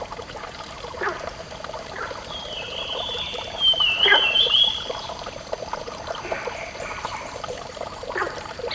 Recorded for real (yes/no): no